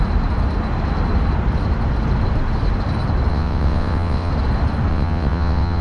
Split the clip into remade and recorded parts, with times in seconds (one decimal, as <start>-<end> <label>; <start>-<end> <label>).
0.0-3.3 recorded; 3.3-4.3 remade; 4.3-4.9 recorded; 4.9-5.8 remade